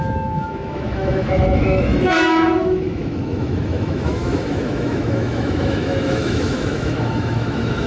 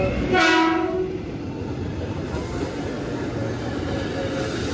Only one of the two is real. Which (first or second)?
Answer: second